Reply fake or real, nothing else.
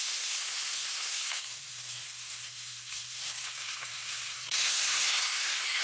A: fake